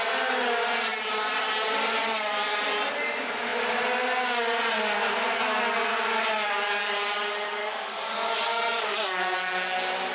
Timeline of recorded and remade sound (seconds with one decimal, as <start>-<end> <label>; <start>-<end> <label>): 0.0-7.6 recorded; 7.6-9.2 remade; 9.2-10.1 recorded